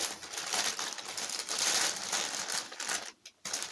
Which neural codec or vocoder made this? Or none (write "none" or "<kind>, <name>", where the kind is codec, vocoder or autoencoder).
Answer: none